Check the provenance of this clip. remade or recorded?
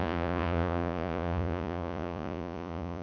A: remade